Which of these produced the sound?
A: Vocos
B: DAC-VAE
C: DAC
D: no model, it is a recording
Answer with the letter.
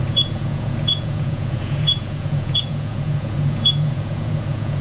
A